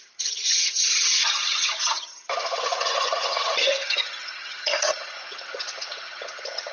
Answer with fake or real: fake